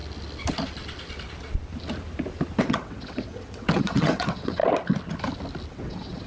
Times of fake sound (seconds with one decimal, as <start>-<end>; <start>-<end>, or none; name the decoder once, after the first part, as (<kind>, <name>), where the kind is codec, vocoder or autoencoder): 2.6-4.6 (vocoder, WaveNeXt); 5.7-6.3